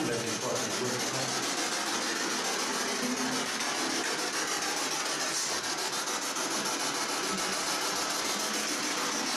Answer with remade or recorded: recorded